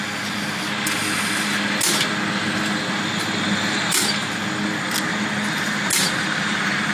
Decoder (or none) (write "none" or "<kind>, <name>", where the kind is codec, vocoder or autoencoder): none